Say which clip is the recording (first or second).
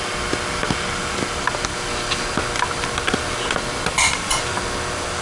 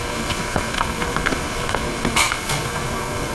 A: first